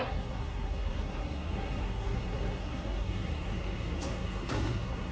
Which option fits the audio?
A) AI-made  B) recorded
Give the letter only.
A